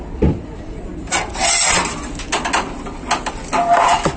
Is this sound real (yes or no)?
yes